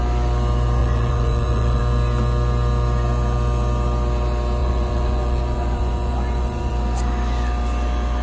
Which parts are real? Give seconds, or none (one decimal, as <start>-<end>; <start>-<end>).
0.0-0.8; 1.8-4.6; 6.7-8.2